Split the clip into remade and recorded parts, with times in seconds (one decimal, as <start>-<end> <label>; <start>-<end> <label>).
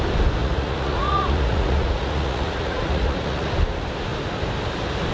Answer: 0.0-0.4 recorded; 0.4-3.5 remade; 3.5-5.1 recorded